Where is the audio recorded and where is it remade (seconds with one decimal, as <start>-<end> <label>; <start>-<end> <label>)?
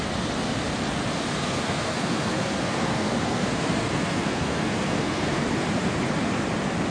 0.0-1.3 recorded; 1.3-5.4 remade; 5.4-6.9 recorded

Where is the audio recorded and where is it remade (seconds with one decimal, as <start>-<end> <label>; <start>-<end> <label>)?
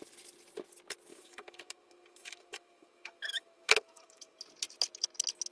0.0-1.1 recorded; 1.1-4.4 remade; 4.4-5.5 recorded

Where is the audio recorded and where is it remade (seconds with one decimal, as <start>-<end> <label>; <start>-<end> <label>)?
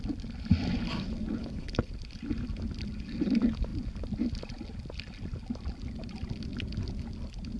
0.0-1.4 recorded; 1.4-1.9 remade; 1.9-7.6 recorded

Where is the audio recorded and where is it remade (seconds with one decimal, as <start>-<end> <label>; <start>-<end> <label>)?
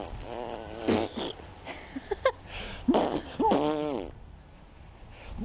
0.0-5.4 recorded